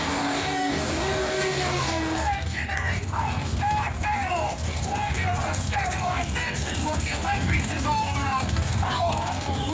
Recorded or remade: remade